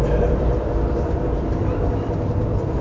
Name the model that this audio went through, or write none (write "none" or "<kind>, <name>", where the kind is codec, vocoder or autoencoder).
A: vocoder, BigVGAN v2